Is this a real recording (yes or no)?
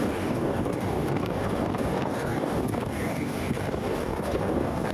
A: no